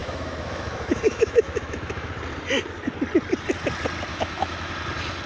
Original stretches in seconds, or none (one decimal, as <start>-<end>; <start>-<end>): 2.1-4.1; 4.7-5.3